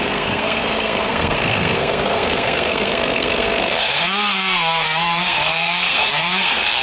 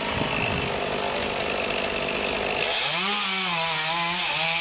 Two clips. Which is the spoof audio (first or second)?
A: first